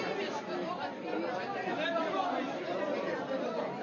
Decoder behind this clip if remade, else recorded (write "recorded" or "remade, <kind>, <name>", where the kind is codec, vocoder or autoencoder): recorded